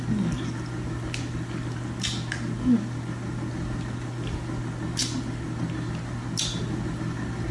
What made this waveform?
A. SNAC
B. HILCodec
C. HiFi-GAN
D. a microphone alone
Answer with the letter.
D